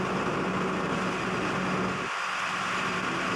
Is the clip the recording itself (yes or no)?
yes